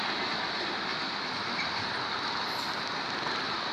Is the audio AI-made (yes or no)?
no